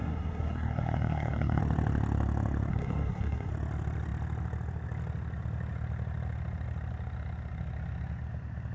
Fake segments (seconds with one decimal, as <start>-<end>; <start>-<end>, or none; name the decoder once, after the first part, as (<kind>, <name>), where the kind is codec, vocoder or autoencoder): 0.0-1.6 (codec, SNAC); 2.7-3.5